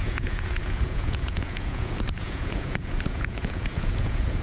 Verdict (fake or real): fake